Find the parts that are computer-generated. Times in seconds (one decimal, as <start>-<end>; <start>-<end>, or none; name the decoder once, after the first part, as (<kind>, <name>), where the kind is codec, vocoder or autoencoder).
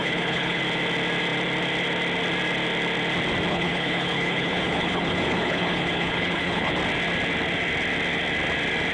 0.0-0.6 (codec, HILCodec); 3.5-6.7